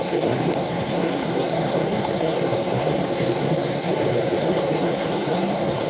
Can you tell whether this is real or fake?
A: fake